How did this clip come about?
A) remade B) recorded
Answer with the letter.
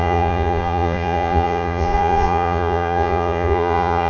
A